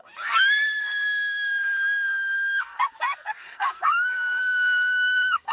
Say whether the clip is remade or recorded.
remade